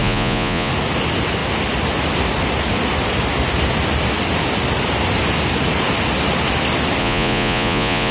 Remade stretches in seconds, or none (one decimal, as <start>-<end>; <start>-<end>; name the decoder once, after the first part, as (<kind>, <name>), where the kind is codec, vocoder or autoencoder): 0.0-0.7 (vocoder, Vocos); 7.0-8.1